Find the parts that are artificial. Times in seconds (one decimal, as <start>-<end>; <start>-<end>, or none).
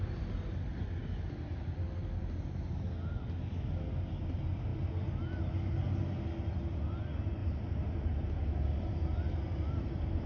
none